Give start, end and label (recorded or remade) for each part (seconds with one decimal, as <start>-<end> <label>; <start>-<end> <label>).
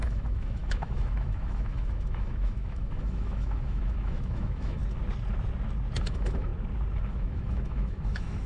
0.0-4.8 remade; 4.8-6.0 recorded; 6.0-6.5 remade; 6.5-7.1 recorded; 7.1-8.5 remade